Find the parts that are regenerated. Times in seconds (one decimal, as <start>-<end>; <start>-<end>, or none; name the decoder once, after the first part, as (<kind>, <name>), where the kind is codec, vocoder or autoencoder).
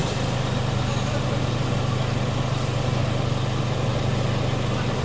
none